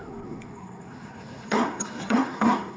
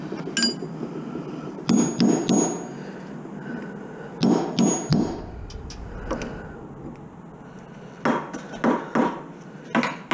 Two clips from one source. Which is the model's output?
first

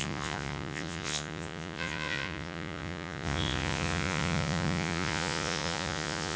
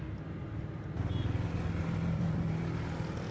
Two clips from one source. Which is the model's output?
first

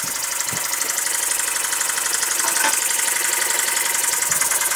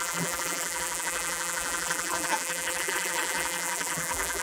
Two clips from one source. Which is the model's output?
second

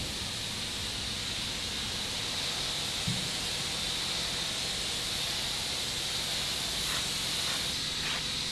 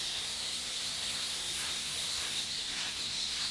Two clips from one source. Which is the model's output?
second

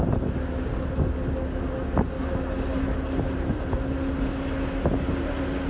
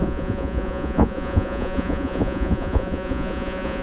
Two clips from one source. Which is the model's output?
second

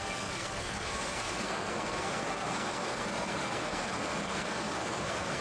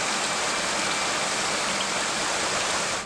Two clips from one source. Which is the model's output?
first